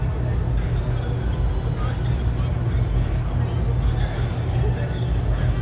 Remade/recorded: recorded